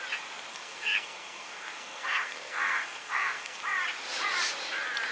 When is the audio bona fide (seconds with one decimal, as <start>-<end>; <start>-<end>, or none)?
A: 0.0-0.5; 3.6-5.1